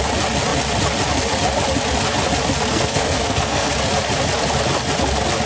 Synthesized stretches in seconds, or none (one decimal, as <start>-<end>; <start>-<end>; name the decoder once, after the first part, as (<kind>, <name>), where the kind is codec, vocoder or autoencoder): 2.7-3.7 (codec, SNAC)